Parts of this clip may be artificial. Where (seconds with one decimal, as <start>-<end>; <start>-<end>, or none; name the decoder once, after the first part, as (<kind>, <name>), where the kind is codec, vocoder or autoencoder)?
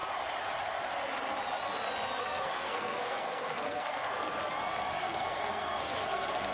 2.2-4.4 (codec, SNAC); 5.0-6.5